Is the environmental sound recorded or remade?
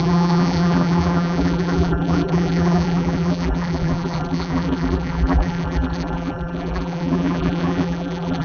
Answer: remade